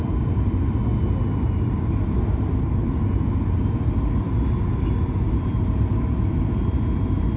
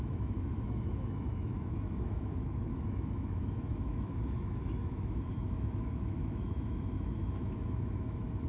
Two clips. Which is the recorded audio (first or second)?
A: first